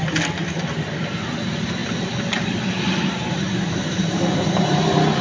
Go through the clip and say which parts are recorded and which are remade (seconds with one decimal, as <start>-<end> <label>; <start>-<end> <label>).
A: 0.0-3.2 recorded; 3.2-5.2 remade